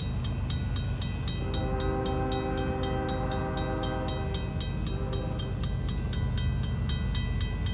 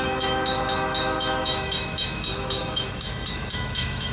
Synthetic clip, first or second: second